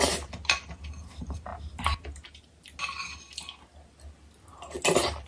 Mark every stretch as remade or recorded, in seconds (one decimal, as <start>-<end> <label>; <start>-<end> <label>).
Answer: 0.0-5.3 recorded